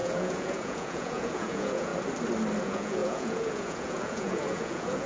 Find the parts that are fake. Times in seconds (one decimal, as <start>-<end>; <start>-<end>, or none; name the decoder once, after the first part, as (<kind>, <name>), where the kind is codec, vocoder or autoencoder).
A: 0.0-1.9 (vocoder, Vocos); 2.6-5.1